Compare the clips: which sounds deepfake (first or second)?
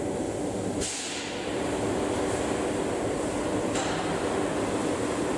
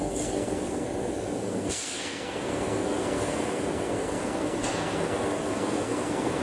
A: second